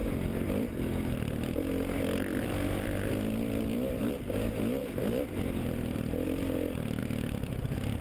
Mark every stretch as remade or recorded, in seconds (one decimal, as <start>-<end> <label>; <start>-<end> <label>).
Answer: 0.0-4.1 remade; 4.1-4.8 recorded; 4.8-6.1 remade; 6.1-7.0 recorded; 7.0-8.0 remade